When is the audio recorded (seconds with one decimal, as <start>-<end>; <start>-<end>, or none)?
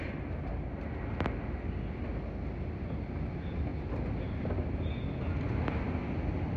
0.0-6.6